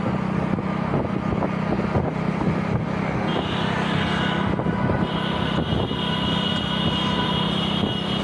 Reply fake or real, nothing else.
real